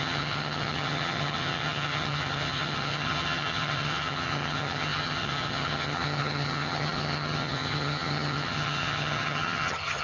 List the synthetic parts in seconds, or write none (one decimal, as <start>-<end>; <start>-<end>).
0.0-10.0